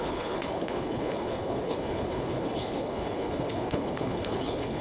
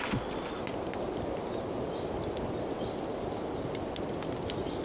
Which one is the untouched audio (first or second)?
second